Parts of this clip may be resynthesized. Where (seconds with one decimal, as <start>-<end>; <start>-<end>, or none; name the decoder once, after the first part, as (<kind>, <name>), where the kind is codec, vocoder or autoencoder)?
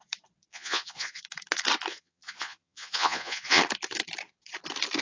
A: 0.5-1.2 (vocoder, Vocos); 1.9-3.6